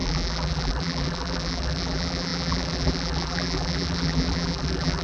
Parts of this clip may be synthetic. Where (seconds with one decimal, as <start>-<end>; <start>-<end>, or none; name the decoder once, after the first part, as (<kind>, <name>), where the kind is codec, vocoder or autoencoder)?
0.0-5.0 (vocoder, BigVGAN v2)